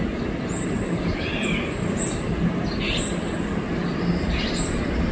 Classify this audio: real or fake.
real